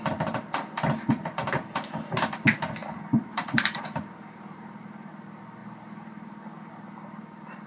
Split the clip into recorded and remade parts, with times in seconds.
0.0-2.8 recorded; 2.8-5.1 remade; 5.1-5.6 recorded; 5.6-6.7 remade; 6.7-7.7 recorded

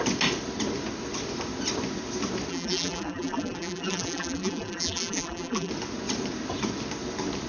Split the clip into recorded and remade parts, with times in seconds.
0.0-2.5 recorded; 2.5-5.7 remade; 5.7-7.5 recorded

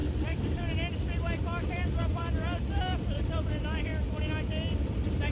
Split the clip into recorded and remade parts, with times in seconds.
0.0-3.9 remade; 3.9-4.7 recorded; 4.7-5.3 remade

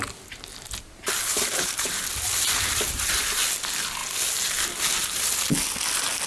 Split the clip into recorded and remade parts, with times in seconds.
0.0-1.3 recorded; 1.3-3.4 remade; 3.4-6.3 recorded

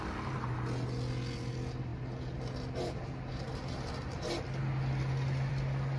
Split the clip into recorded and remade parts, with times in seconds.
0.0-6.0 recorded

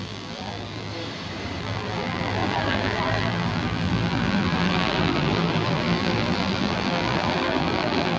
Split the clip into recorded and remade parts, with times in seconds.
0.0-0.9 remade; 0.9-1.6 recorded; 1.6-8.2 remade

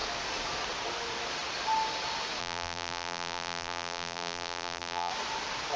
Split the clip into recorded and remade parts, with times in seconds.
0.0-2.4 recorded; 2.4-5.1 remade; 5.1-5.8 recorded